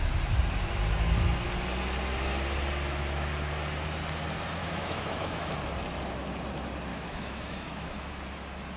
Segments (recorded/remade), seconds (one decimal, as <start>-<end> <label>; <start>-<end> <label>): 0.0-4.6 recorded; 4.6-5.5 remade; 5.5-6.9 recorded; 6.9-8.1 remade; 8.1-8.8 recorded